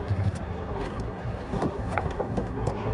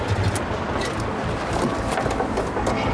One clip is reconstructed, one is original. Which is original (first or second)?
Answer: second